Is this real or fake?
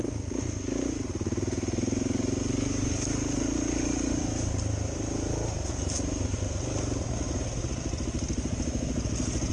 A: real